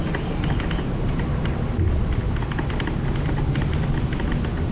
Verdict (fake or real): real